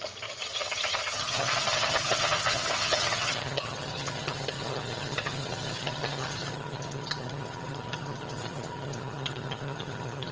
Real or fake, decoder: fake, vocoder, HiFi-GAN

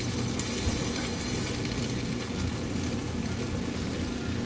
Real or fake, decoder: fake, vocoder, BigVGAN v2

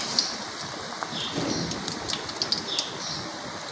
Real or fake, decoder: real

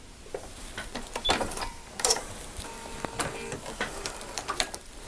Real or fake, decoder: fake, vocoder, BigVGAN v2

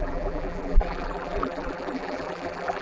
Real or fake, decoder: fake, vocoder, BigVGAN v2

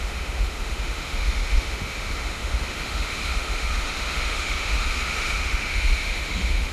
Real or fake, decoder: fake, autoencoder, DAC-VAE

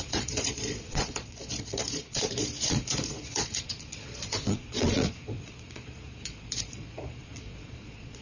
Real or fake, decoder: fake, vocoder, Vocos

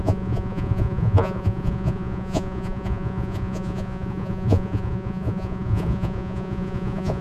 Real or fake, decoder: fake, vocoder, Vocos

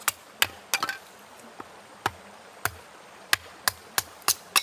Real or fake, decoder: real